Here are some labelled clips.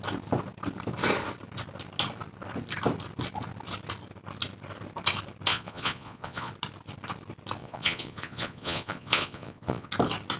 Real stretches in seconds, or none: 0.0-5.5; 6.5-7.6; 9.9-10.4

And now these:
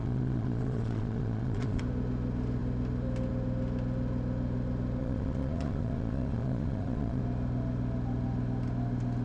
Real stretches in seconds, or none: 1.8-5.0; 7.2-9.2